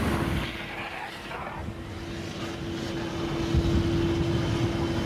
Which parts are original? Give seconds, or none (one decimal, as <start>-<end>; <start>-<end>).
0.0-5.1